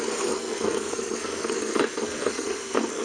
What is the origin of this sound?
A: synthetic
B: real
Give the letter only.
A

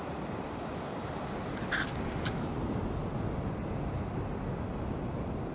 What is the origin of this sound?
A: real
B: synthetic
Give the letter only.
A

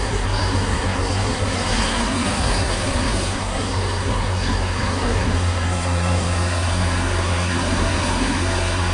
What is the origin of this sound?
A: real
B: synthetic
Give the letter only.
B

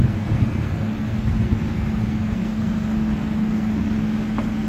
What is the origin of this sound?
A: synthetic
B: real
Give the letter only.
A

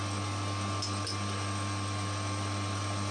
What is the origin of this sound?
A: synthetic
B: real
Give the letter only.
B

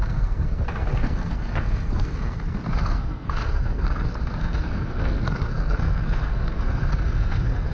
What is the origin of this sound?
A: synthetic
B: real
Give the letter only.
A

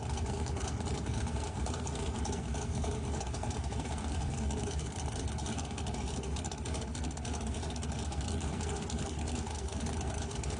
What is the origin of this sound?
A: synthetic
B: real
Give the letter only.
A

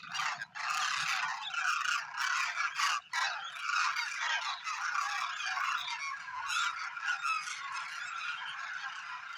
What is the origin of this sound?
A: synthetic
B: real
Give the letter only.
B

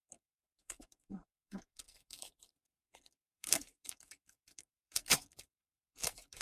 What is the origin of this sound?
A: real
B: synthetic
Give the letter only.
B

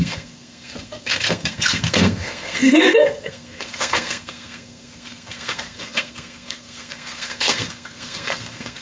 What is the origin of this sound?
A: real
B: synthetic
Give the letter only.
B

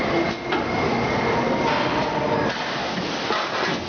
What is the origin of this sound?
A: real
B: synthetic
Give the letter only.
A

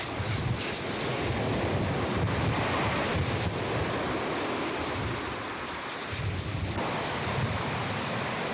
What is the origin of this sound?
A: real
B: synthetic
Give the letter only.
A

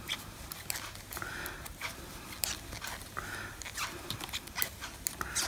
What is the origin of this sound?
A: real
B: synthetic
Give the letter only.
A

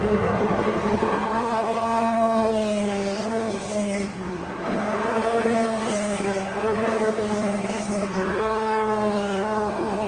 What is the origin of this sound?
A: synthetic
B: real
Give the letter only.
A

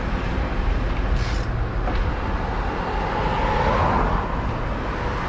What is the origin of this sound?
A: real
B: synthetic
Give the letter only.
A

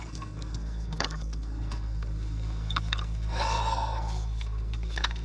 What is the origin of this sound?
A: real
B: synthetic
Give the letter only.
B